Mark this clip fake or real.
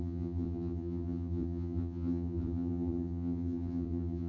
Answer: fake